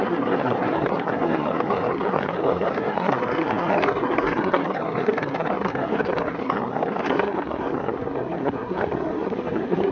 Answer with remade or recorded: remade